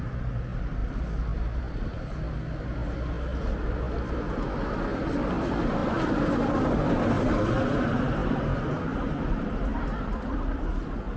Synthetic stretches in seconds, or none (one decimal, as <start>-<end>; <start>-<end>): none